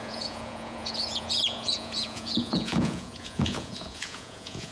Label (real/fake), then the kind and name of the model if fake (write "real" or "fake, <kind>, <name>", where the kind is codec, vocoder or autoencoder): fake, vocoder, Vocos